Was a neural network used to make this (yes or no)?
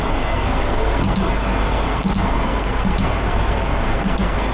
yes